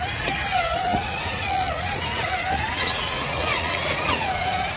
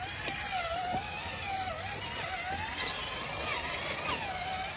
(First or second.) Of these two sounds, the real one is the second